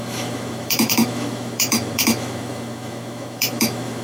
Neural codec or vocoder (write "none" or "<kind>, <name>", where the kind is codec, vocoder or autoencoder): autoencoder, DAC-VAE